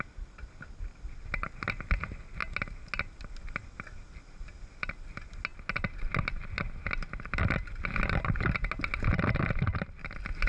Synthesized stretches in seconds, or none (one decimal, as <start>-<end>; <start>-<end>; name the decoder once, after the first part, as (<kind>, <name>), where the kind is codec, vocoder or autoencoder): none